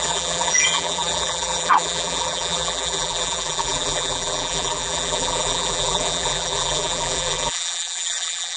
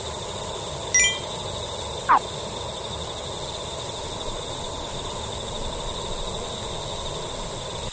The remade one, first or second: first